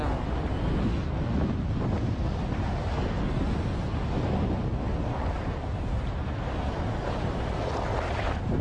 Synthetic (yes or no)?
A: no